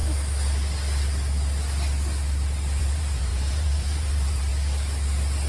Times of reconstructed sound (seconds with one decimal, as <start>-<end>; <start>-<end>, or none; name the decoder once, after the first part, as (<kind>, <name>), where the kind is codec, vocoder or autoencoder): 2.8-4.5 (vocoder, BigVGAN v2)